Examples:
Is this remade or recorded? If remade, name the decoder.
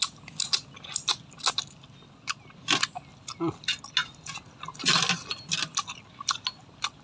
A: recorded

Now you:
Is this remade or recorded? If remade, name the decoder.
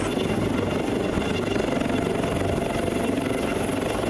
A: recorded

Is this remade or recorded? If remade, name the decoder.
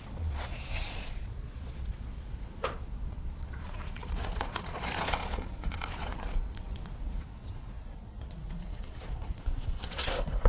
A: remade, vocoder, Vocos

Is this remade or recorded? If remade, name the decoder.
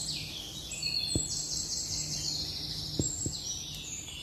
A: recorded